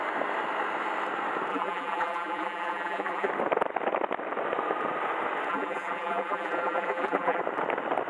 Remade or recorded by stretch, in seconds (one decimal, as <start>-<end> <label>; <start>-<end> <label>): 0.0-1.5 recorded; 1.5-3.3 remade; 3.3-5.5 recorded; 5.5-7.4 remade; 7.4-8.1 recorded